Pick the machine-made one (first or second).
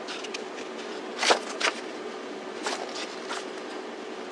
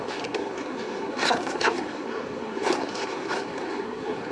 second